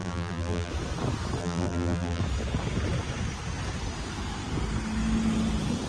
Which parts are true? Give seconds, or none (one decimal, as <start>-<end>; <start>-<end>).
0.7-1.4; 2.2-5.9